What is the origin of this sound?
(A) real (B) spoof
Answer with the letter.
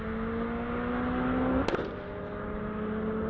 A